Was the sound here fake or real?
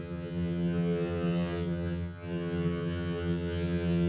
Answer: fake